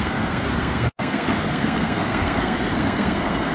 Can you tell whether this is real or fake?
fake